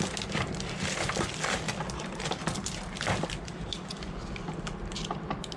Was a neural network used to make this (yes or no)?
no